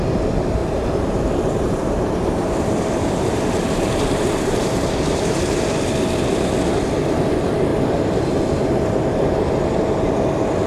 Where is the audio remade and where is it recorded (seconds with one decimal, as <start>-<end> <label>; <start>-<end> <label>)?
0.0-0.6 recorded; 0.6-5.6 remade; 5.6-10.7 recorded